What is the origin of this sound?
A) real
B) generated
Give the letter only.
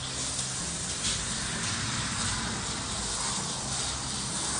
A